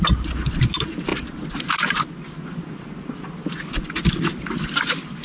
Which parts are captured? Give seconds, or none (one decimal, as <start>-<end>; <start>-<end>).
0.0-5.2